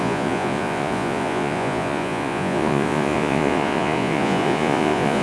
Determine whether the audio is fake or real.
fake